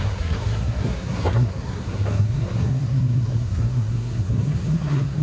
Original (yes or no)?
no